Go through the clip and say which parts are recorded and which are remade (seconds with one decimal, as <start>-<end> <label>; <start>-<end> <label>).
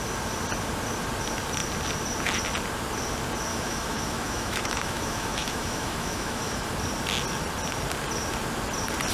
0.0-3.5 recorded; 3.5-6.7 remade; 6.7-9.1 recorded